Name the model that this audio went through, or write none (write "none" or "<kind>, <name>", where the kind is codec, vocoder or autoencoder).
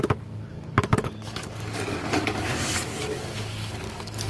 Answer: codec, DAC